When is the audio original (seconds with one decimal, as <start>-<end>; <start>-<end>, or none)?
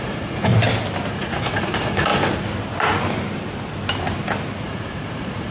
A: 0.5-1.1; 2.1-4.6